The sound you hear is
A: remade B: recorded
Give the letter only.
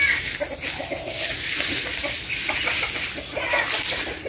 B